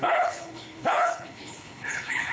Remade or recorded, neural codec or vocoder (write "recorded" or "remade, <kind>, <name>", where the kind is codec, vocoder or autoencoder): remade, codec, HILCodec